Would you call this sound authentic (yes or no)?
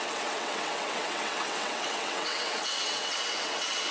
no